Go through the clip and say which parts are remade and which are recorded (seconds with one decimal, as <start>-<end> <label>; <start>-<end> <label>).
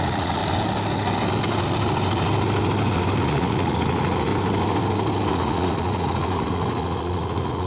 0.0-0.4 remade; 0.4-3.2 recorded; 3.2-4.3 remade; 4.3-5.3 recorded; 5.3-7.7 remade